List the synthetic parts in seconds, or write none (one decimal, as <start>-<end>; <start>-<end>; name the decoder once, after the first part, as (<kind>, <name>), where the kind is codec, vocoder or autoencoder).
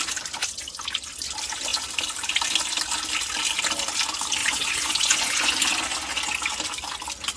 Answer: 4.4-5.5 (vocoder, Vocos)